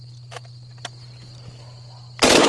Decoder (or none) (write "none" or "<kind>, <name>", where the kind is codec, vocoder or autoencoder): none